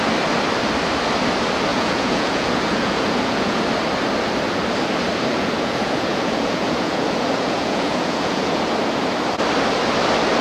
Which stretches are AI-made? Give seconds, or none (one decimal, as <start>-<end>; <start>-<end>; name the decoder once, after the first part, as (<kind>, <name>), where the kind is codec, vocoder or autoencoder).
1.7-3.6 (vocoder, Vocos); 5.3-8.6